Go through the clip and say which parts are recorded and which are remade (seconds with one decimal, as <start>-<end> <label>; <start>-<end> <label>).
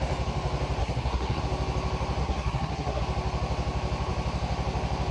0.0-0.8 recorded; 0.8-1.4 remade; 1.4-2.2 recorded; 2.2-3.0 remade; 3.0-5.1 recorded